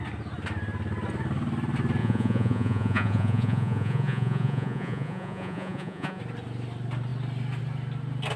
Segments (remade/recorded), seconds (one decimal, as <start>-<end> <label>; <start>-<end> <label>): 0.0-2.0 recorded; 2.0-6.2 remade; 6.2-8.4 recorded